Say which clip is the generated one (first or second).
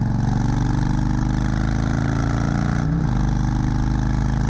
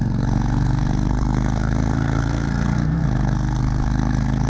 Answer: second